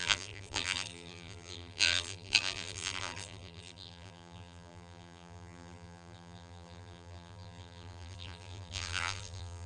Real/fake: fake